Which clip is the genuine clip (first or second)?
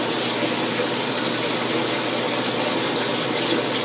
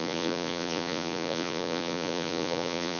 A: first